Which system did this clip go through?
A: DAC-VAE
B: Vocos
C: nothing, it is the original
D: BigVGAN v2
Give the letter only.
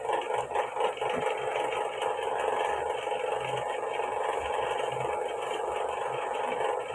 C